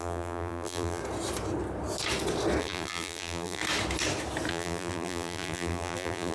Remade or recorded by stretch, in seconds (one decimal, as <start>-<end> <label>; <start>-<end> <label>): 0.0-1.0 remade; 1.0-2.6 recorded; 2.6-3.6 remade; 3.6-4.5 recorded; 4.5-6.3 remade